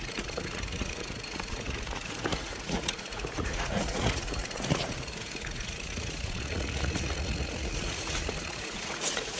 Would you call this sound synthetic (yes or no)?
yes